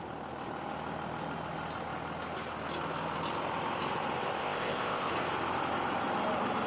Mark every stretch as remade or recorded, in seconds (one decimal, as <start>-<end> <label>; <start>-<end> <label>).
0.0-4.4 recorded; 4.4-5.1 remade; 5.1-6.7 recorded